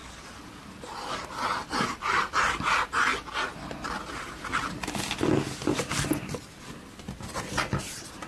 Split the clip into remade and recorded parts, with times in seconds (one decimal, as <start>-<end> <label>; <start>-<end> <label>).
0.0-8.3 recorded